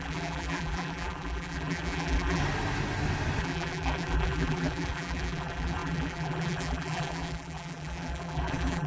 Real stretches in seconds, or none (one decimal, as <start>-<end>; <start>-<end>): 2.4-3.4